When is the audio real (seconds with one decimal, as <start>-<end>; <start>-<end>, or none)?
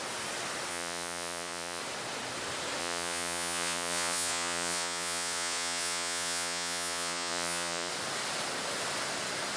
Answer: 0.0-0.7; 1.8-2.8; 7.9-9.6